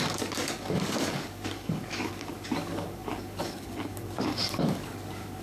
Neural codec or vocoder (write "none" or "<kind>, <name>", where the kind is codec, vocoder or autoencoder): codec, DAC